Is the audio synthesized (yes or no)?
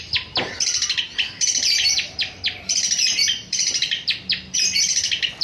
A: yes